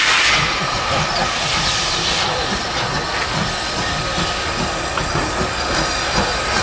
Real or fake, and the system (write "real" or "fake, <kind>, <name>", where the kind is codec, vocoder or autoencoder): real